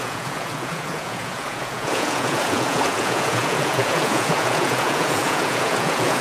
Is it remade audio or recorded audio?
remade